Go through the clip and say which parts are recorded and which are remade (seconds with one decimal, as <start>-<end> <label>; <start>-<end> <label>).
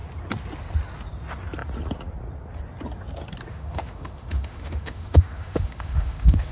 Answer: 0.0-3.5 recorded; 3.5-6.5 remade